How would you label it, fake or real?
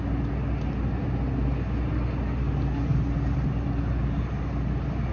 real